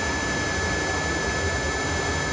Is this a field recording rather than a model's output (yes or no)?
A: yes